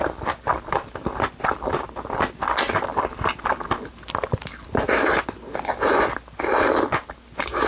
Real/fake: real